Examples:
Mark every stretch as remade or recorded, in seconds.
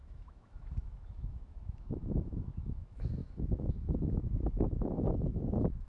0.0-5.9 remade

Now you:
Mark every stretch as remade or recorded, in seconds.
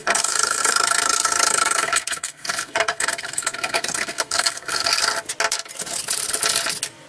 0.0-4.9 remade; 4.9-7.1 recorded